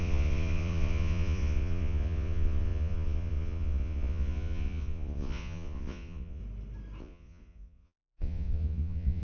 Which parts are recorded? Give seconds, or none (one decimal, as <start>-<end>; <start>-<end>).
6.4-7.0